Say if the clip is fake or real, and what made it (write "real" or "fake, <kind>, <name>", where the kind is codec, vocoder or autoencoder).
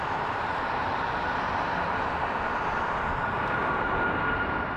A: real